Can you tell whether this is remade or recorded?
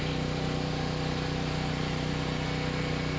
recorded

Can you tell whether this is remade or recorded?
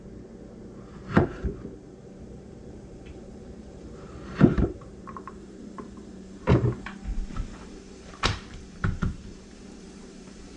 remade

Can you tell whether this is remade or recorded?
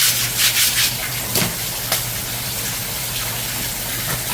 recorded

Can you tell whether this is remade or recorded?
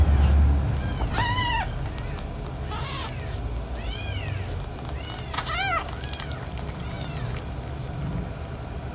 recorded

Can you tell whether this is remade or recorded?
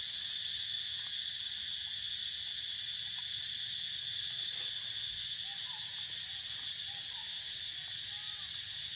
recorded